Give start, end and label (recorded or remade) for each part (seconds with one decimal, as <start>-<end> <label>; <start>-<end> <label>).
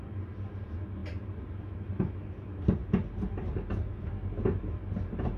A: 0.0-5.4 recorded